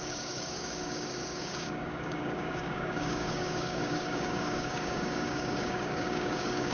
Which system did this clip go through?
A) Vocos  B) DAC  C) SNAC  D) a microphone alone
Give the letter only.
B